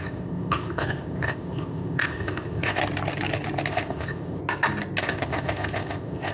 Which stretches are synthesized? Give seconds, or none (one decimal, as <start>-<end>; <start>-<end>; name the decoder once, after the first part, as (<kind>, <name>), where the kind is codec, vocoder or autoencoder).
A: 0.0-2.8 (codec, ZipCodec); 3.7-4.4; 5.0-6.3

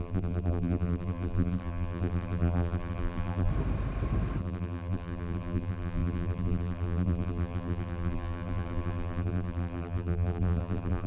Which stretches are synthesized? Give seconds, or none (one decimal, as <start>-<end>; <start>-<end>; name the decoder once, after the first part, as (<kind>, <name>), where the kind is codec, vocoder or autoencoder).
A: 0.0-3.5 (vocoder, BigVGAN v2); 4.4-11.1

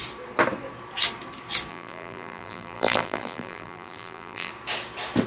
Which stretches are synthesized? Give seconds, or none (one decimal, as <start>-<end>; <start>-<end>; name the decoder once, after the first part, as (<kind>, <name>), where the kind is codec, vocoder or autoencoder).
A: 1.7-4.5 (vocoder, BigVGAN v2)

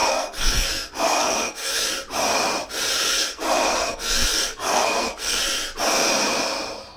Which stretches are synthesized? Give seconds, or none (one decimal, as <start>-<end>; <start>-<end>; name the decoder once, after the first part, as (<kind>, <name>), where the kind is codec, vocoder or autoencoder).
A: 0.0-1.9 (codec, SNAC); 3.1-5.4